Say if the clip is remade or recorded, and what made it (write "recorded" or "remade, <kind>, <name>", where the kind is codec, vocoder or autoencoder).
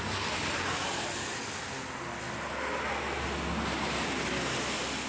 recorded